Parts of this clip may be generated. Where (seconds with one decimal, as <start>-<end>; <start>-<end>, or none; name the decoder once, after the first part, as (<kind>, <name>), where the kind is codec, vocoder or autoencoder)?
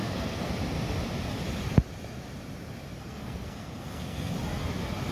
0.0-0.5 (codec, SNAC); 3.0-4.3